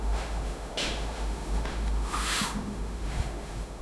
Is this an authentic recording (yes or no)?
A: no